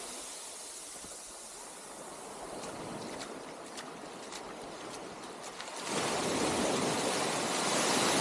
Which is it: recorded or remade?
recorded